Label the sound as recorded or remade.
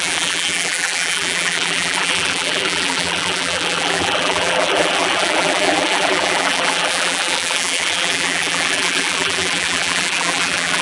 remade